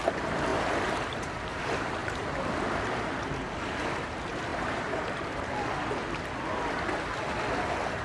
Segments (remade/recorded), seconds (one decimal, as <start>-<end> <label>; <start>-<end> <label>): 0.0-0.5 recorded; 0.5-1.6 remade; 1.6-2.0 recorded; 2.0-2.5 remade; 2.5-4.5 recorded; 4.5-5.5 remade; 5.5-8.0 recorded